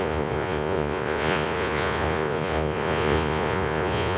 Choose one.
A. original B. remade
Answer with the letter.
B